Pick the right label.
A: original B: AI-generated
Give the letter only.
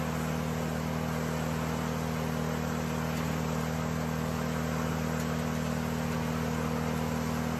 A